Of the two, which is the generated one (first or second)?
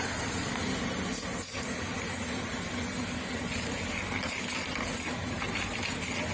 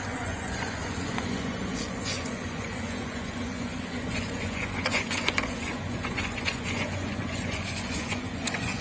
second